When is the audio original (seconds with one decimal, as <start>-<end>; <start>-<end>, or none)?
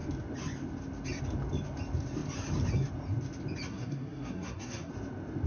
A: 0.0-3.7; 4.9-5.5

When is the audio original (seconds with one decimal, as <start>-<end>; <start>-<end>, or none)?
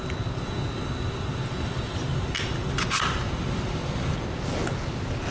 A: 0.0-5.3